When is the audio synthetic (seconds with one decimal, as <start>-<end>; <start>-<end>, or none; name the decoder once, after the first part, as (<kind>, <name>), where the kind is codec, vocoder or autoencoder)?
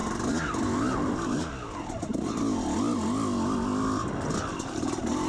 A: none